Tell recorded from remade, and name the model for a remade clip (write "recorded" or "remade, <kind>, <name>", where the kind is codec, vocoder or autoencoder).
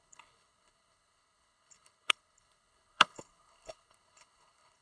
remade, codec, HILCodec